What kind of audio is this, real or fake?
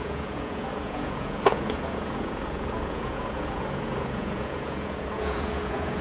fake